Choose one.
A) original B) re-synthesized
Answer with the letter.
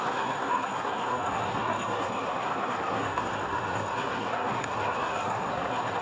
B